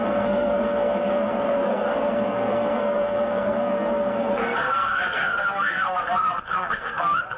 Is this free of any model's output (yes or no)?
no